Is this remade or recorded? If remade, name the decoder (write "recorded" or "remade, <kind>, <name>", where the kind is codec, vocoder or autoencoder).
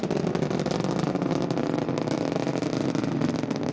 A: recorded